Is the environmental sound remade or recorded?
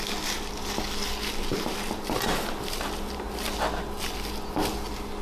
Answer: recorded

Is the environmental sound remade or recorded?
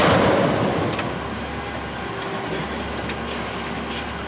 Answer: recorded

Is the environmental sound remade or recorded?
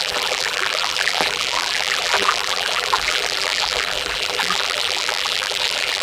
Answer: remade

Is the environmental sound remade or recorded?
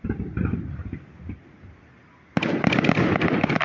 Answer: recorded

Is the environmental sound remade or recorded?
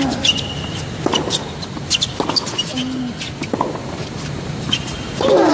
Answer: recorded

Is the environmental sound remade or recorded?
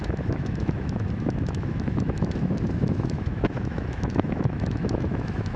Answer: remade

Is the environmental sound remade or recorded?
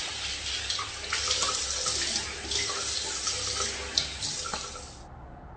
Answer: recorded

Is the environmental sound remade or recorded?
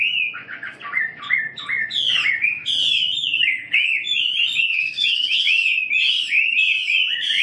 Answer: remade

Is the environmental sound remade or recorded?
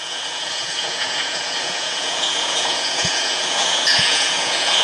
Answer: remade